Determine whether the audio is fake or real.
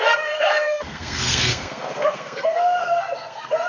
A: fake